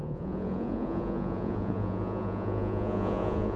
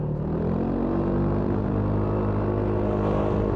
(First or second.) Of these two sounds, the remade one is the first